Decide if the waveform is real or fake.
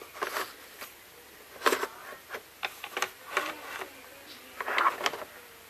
real